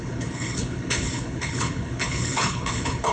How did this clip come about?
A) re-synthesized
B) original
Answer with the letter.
A